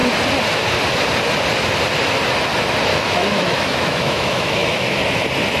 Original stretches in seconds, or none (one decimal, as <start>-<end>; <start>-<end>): 0.0-2.9; 5.0-5.6